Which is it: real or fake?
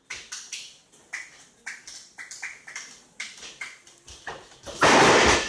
real